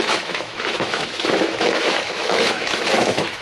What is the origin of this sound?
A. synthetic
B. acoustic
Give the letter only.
A